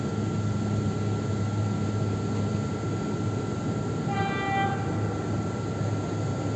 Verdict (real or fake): real